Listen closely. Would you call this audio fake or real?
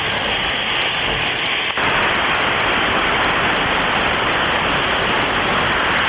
real